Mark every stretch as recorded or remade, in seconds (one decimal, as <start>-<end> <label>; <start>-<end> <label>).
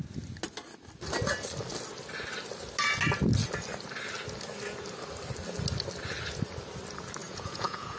0.0-7.2 recorded; 7.2-8.0 remade